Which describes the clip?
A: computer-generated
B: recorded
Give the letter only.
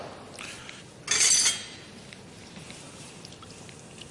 B